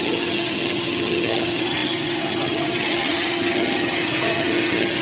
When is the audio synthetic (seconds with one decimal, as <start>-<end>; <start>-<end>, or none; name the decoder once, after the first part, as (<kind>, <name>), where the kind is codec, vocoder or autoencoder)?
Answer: 0.0-5.0 (vocoder, HiFi-GAN)